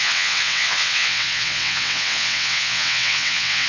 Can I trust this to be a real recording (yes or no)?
no